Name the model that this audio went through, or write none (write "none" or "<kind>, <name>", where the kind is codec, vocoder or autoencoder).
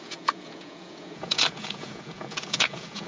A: vocoder, Vocos